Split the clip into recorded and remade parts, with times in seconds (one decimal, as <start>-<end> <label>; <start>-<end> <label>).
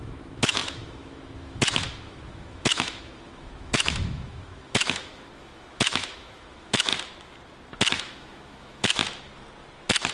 0.0-6.9 remade; 6.9-7.9 recorded; 7.9-9.0 remade; 9.0-10.1 recorded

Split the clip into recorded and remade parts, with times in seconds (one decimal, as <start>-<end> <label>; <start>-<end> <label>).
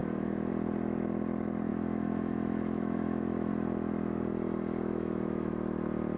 0.0-0.5 remade; 0.5-1.7 recorded; 1.7-3.5 remade; 3.5-4.9 recorded; 4.9-5.5 remade; 5.5-6.2 recorded